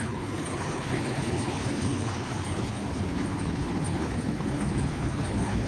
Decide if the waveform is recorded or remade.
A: remade